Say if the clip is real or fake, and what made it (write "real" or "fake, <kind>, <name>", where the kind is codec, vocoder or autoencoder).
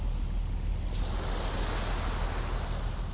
real